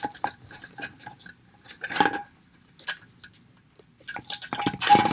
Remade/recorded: recorded